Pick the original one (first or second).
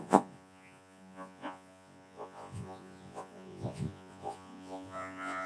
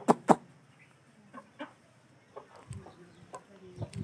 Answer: second